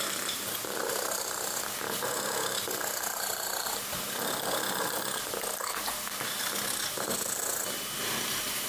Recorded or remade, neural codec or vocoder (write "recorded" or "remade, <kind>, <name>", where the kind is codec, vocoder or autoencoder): recorded